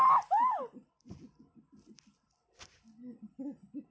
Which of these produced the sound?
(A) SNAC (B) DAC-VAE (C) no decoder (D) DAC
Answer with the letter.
C